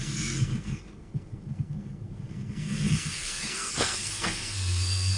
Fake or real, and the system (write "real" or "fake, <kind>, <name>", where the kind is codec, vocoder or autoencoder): fake, codec, SNAC